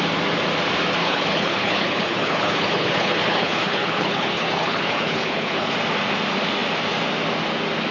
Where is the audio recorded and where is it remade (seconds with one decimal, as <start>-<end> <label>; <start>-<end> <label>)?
0.0-1.0 recorded; 1.0-5.7 remade; 5.7-7.9 recorded